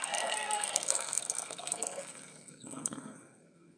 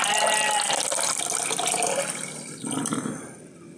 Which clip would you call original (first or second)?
second